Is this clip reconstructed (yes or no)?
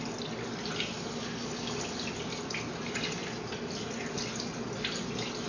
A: no